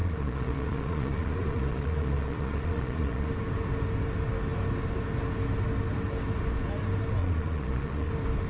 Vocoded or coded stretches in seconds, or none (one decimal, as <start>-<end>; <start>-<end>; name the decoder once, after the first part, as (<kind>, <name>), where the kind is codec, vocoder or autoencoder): 0.0-3.3 (vocoder, Vocos); 7.2-8.1